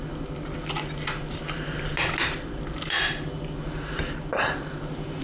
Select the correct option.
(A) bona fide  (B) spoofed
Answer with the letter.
A